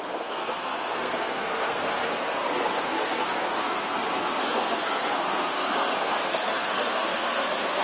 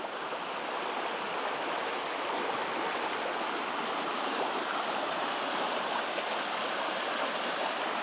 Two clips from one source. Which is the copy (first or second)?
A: first